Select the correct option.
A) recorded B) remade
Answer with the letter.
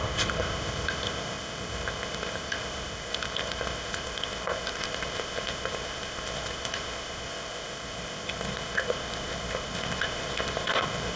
B